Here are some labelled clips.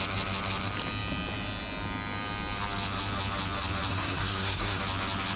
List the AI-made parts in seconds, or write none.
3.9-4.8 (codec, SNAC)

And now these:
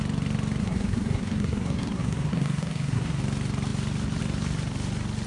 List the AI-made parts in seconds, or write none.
0.6-3.2 (codec, SNAC)

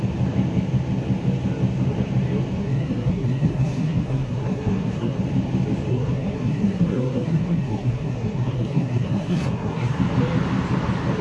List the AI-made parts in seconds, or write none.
2.6-5.2 (codec, SNAC); 5.9-10.0

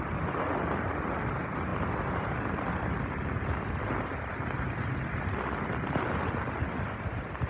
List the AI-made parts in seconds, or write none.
none

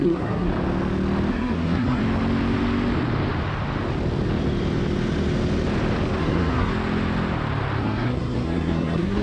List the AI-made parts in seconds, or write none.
0.0-0.5 (codec, SNAC); 1.3-2.0; 6.2-6.7; 7.8-9.2

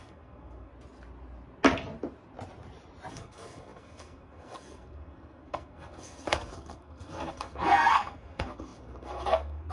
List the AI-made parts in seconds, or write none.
0.0-0.7 (codec, SNAC); 3.1-9.7

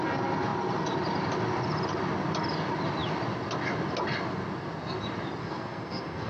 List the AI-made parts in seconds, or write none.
5.4-6.3 (codec, SNAC)